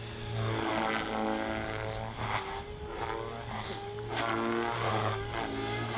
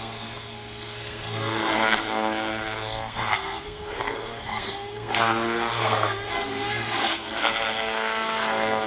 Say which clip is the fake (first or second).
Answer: second